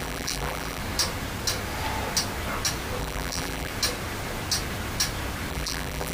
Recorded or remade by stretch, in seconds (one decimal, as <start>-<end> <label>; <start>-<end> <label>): 0.0-0.8 remade; 0.8-3.0 recorded; 3.0-3.7 remade; 3.7-5.5 recorded; 5.5-6.1 remade